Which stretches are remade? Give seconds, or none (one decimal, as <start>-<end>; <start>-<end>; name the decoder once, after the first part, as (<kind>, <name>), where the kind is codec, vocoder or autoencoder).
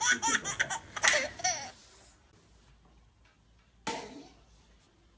none